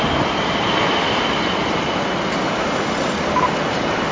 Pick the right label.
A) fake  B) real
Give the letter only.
B